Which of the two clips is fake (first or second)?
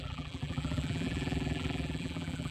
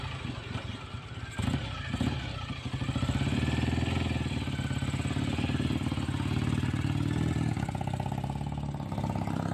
first